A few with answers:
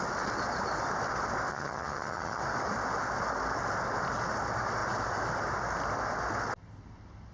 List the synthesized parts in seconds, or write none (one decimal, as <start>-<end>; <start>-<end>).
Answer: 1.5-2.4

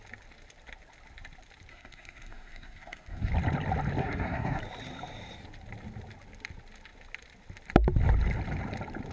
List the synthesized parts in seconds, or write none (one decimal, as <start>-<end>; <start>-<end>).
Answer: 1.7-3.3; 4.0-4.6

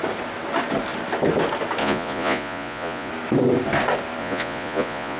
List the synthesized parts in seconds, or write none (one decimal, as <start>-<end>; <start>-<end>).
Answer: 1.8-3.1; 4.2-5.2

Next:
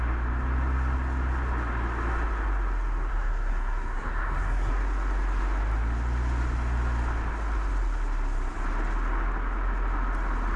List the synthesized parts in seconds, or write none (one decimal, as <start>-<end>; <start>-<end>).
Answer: 3.1-4.7